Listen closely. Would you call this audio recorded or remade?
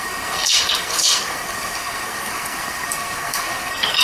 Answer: remade